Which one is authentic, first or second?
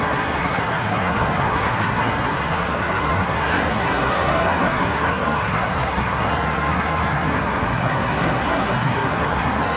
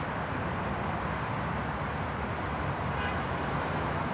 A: second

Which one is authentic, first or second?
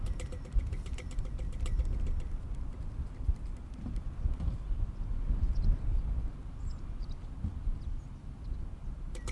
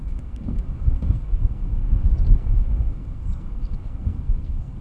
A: first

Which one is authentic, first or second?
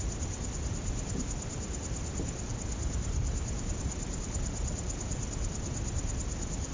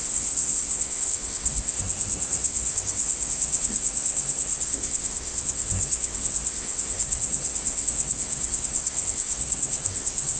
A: first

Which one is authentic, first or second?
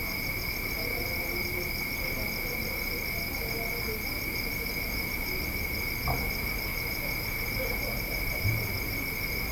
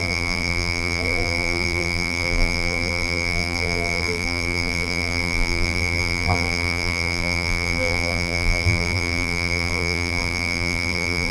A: first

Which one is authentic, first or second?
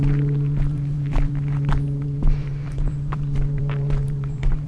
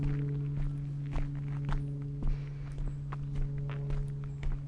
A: second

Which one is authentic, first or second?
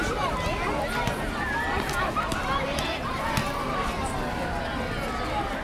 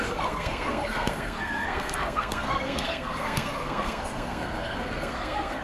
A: first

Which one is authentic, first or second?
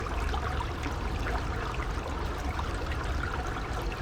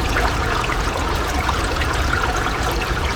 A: first